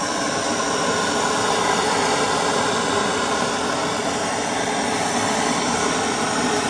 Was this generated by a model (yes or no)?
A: no